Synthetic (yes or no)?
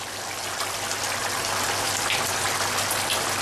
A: no